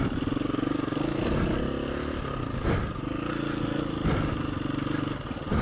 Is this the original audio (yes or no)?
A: yes